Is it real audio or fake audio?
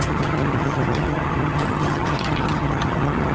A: fake